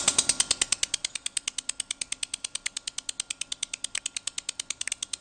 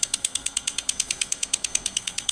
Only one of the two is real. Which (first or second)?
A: first